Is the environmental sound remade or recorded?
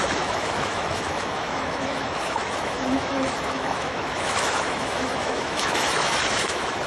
remade